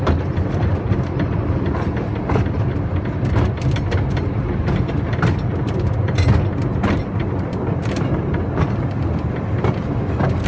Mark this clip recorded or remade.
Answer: remade